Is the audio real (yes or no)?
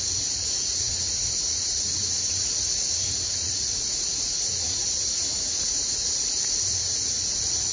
no